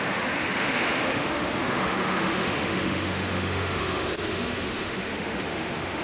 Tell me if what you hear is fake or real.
fake